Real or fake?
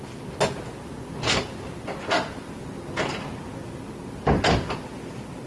real